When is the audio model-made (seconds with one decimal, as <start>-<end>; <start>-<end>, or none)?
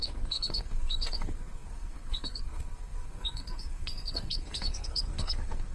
0.0-5.7